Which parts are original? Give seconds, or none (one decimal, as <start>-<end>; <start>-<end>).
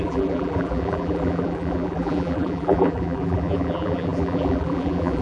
none